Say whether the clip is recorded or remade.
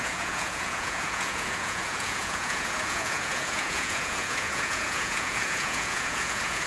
remade